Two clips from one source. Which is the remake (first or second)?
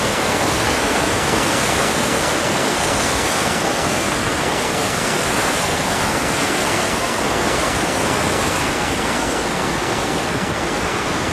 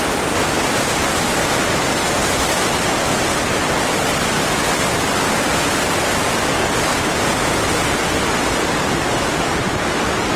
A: first